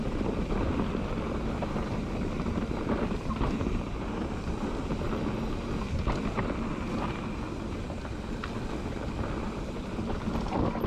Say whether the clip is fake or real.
real